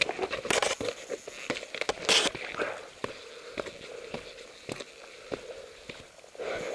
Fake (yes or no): no